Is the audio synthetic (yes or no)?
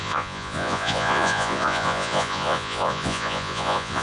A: yes